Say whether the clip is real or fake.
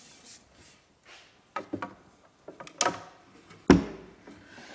real